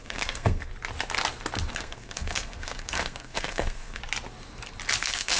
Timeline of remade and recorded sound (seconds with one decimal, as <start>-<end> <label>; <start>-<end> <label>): 0.0-0.7 remade; 0.7-1.7 recorded; 1.7-4.0 remade; 4.0-5.0 recorded; 5.0-5.4 remade